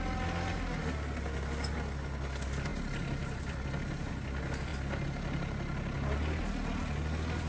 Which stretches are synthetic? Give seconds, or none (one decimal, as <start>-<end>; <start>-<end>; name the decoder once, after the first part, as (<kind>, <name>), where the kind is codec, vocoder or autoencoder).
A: none